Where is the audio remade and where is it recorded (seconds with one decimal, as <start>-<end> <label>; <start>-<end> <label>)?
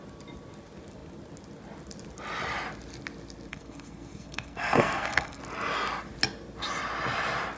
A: 0.0-3.5 recorded; 3.5-5.4 remade; 5.4-7.6 recorded